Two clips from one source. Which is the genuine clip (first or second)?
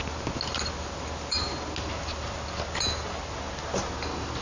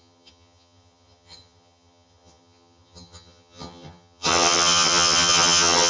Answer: first